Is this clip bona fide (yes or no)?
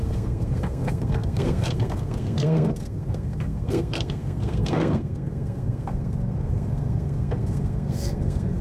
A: no